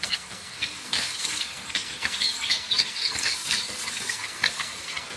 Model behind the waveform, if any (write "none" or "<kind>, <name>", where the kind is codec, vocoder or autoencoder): codec, SNAC